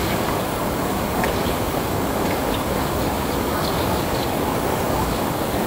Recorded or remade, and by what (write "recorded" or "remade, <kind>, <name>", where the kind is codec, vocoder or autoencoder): remade, codec, DAC